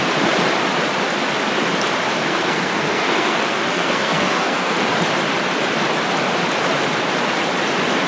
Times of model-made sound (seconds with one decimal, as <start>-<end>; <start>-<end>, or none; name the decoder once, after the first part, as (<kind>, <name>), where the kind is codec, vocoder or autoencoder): 2.2-4.9 (codec, SNAC)